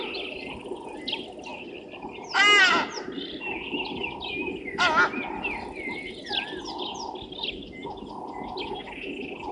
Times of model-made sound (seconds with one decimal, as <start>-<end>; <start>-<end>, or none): none